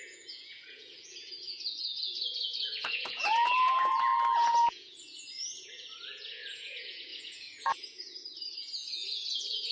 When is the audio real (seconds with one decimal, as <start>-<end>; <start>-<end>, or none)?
none